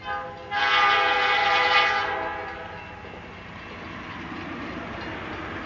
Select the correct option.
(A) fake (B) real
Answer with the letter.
B